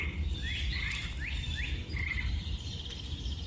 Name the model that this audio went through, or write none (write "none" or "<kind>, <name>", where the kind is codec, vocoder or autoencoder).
none